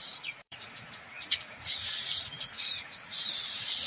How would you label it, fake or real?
fake